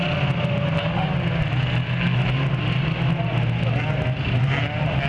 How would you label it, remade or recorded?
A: recorded